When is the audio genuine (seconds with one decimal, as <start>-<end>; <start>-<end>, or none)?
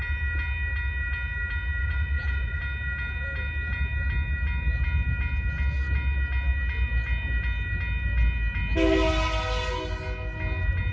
0.0-1.8; 2.6-10.9